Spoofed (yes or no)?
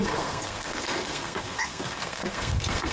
yes